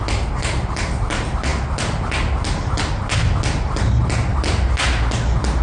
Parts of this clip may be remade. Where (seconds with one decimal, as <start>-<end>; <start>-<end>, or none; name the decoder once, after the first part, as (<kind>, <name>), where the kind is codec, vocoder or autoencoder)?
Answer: none